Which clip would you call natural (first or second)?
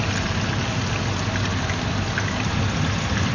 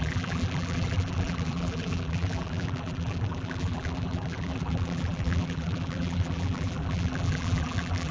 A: first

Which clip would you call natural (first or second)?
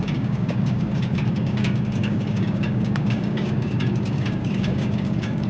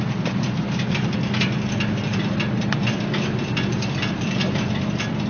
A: second